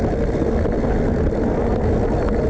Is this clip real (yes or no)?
yes